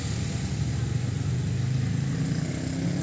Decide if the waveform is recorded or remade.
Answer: recorded